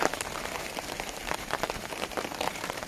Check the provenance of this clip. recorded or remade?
remade